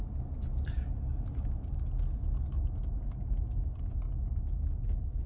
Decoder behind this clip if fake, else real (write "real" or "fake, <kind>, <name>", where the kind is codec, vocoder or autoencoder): real